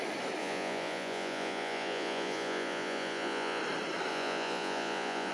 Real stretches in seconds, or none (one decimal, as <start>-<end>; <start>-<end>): 0.0-0.4; 3.6-4.1